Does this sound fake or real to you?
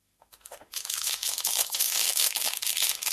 fake